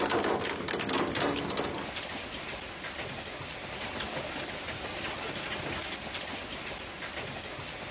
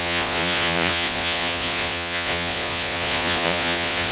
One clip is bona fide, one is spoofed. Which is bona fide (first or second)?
first